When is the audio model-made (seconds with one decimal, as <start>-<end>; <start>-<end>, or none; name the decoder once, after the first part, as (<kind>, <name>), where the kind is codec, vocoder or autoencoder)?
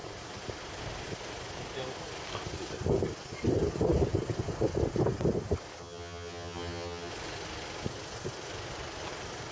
5.8-7.1 (vocoder, HiFi-GAN)